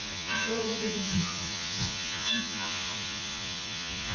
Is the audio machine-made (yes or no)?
yes